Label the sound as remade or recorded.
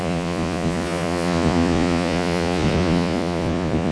remade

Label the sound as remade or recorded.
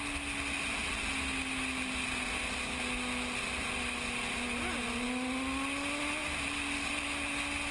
recorded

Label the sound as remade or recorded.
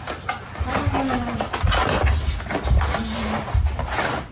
recorded